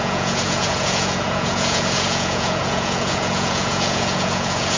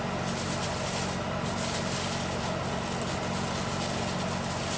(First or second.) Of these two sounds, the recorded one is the second